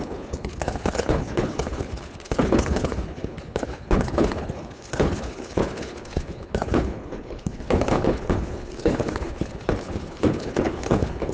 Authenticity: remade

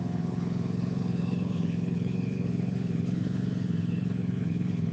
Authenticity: remade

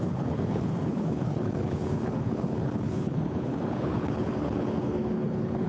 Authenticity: remade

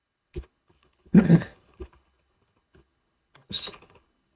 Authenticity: remade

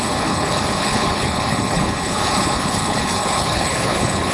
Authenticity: remade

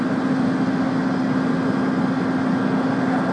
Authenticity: recorded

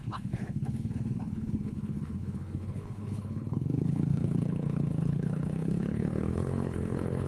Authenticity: remade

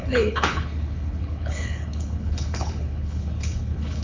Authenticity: remade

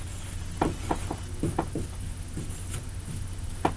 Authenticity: recorded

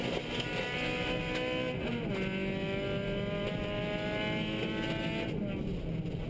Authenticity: recorded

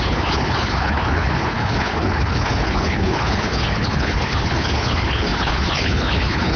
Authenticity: remade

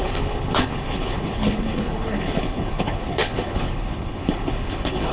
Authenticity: remade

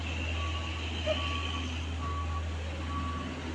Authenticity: recorded